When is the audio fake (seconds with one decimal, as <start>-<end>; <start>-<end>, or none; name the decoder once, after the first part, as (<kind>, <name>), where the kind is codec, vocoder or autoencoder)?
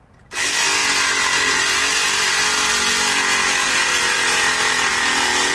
none